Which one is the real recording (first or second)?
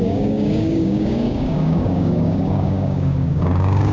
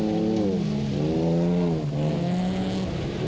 second